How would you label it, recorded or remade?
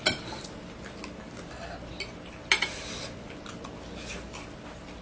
recorded